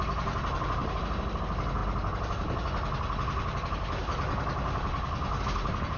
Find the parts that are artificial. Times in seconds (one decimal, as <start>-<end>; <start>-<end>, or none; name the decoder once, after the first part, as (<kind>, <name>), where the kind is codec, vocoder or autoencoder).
0.8-1.4 (vocoder, BigVGAN v2)